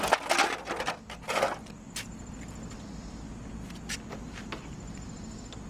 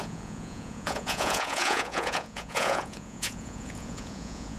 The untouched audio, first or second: first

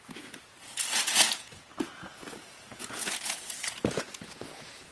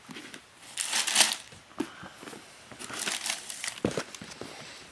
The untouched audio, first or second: second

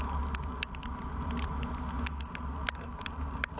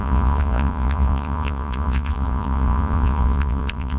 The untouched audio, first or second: first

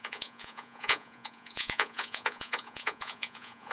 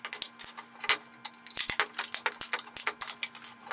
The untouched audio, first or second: second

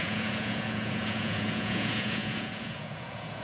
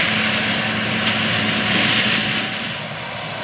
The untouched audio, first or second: second